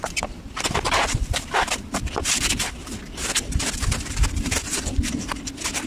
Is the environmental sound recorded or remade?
remade